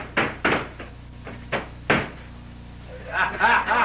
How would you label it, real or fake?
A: real